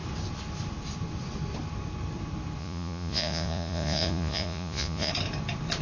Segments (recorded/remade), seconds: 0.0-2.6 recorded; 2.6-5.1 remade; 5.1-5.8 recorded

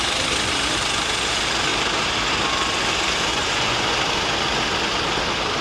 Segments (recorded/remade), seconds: 0.0-3.3 recorded; 3.3-3.9 remade; 3.9-5.6 recorded

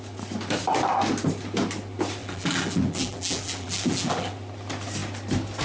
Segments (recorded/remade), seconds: 0.0-2.2 recorded; 2.2-4.3 remade; 4.3-5.6 recorded

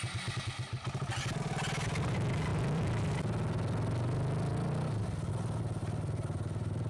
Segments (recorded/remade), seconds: 0.0-5.8 recorded; 5.8-6.9 remade